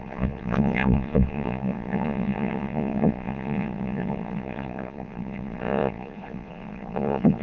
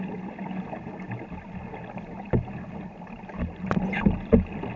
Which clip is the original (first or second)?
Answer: second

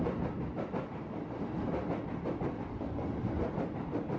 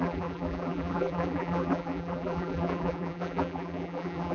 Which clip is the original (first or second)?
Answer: first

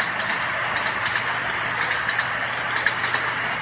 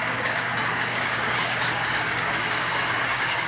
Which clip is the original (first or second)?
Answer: first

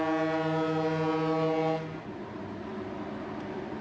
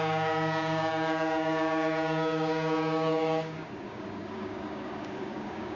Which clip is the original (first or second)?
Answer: first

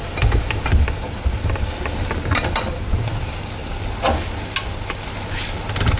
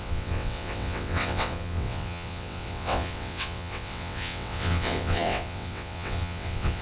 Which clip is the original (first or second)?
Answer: first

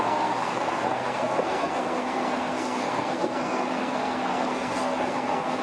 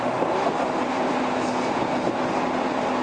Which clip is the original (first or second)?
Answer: second